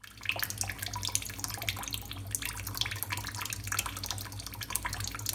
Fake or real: real